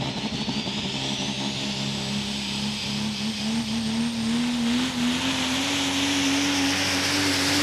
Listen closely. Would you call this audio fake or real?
real